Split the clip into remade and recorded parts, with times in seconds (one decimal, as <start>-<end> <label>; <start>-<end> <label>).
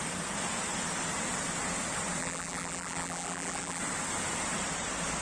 0.0-2.2 recorded; 2.2-3.8 remade; 3.8-5.2 recorded